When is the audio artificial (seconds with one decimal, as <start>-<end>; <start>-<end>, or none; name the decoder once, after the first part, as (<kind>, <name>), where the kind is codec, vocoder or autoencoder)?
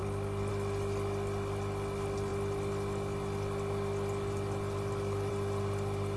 none